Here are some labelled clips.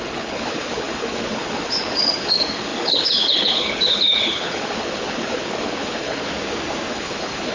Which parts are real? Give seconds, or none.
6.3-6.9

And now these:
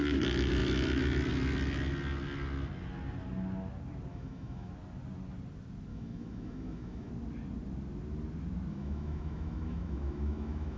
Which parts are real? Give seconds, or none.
0.0-4.1; 4.7-5.9; 7.1-8.7

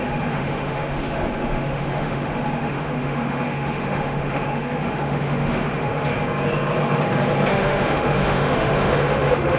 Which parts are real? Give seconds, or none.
6.1-7.5

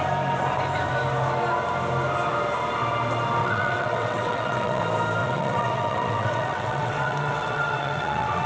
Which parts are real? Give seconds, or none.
0.0-3.4; 4.8-5.2

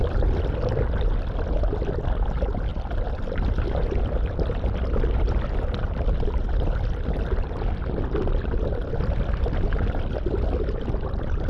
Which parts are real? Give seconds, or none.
0.0-11.5